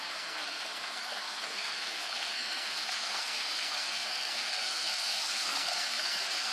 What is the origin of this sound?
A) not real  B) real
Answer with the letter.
A